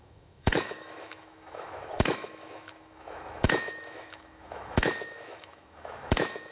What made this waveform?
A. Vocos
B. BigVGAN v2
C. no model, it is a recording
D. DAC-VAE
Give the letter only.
D